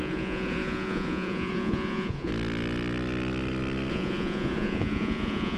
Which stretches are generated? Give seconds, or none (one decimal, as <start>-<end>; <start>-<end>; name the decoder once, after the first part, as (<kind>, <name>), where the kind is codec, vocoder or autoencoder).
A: 0.0-2.3 (vocoder, Vocos); 3.9-5.6